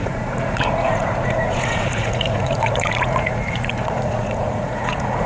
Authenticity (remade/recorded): remade